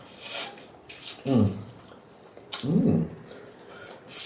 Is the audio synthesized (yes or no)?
no